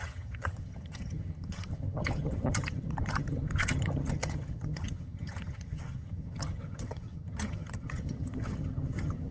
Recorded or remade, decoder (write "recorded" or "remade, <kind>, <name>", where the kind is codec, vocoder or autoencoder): remade, vocoder, HiFi-GAN